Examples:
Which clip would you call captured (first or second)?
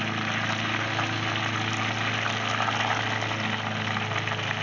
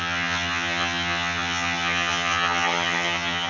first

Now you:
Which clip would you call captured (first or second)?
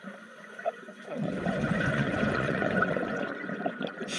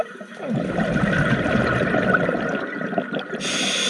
second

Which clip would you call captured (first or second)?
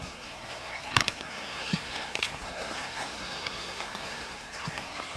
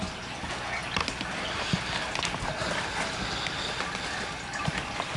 second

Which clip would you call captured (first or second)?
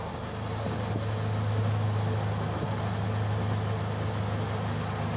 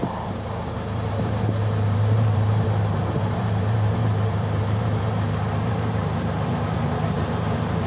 first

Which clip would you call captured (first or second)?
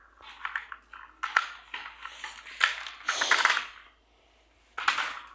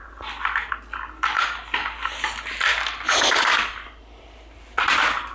first